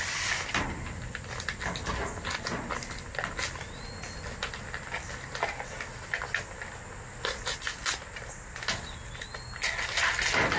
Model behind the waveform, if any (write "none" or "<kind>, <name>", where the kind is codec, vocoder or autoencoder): none